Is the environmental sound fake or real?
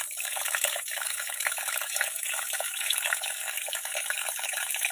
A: fake